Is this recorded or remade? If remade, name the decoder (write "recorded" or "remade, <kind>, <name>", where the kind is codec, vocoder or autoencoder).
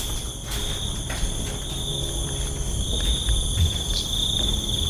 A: recorded